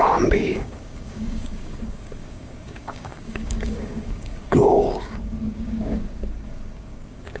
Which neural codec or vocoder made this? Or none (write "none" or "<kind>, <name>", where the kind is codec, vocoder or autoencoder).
codec, DAC